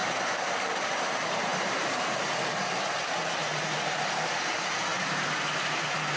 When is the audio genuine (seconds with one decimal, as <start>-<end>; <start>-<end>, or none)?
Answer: 0.6-1.5; 2.2-3.4; 4.4-4.9